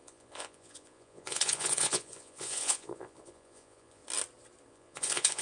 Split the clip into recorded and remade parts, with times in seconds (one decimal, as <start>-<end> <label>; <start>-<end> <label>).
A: 0.0-4.0 remade; 4.0-4.7 recorded; 4.7-5.4 remade